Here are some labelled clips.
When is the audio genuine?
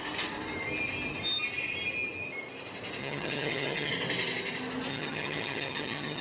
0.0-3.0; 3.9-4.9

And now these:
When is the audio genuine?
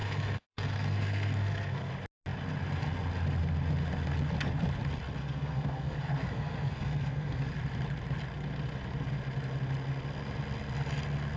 1.9-5.2; 7.5-11.4